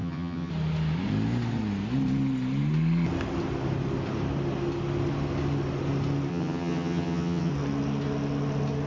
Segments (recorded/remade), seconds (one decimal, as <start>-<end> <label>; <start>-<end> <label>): 0.0-0.5 remade; 0.5-6.3 recorded; 6.3-7.5 remade; 7.5-8.9 recorded